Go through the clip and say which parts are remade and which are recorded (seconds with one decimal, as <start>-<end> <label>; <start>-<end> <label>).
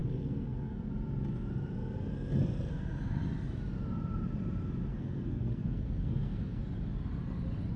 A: 0.0-0.9 remade; 0.9-2.7 recorded; 2.7-3.2 remade; 3.2-4.9 recorded; 4.9-6.6 remade; 6.6-7.8 recorded